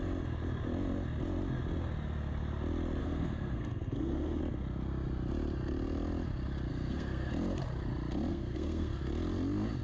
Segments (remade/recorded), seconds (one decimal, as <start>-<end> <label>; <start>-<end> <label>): 0.0-3.0 recorded; 3.0-4.4 remade; 4.4-6.7 recorded; 6.7-7.3 remade; 7.3-8.3 recorded; 8.3-9.0 remade; 9.0-9.8 recorded